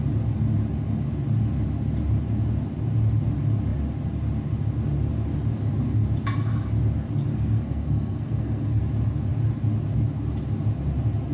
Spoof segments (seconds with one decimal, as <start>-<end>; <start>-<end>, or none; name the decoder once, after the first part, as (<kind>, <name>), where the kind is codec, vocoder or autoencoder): 7.3-8.8 (codec, SNAC)